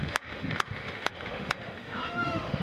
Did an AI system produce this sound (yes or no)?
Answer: yes